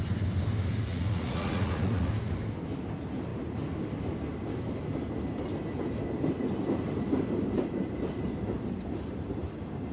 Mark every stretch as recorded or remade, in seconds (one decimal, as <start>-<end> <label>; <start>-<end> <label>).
0.0-0.9 recorded; 0.9-2.1 remade; 2.1-9.9 recorded